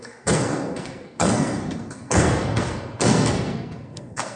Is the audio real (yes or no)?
no